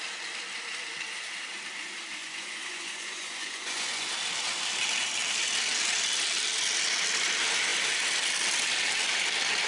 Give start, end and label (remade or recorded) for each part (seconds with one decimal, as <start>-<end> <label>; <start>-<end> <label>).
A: 0.0-2.2 recorded; 2.2-4.1 remade; 4.1-9.7 recorded